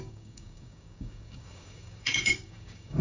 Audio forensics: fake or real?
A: fake